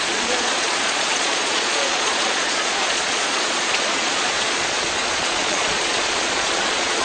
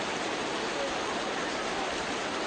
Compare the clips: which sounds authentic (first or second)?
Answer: second